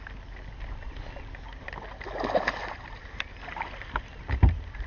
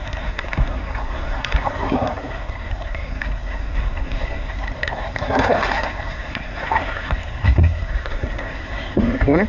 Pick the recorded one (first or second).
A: first